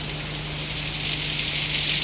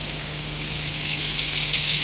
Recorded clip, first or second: first